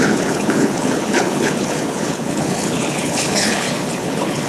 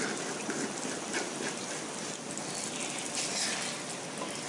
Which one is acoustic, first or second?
second